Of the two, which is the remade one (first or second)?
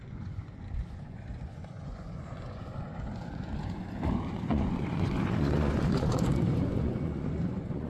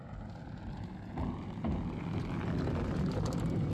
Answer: first